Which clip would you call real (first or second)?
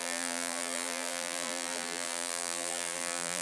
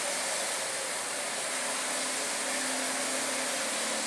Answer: second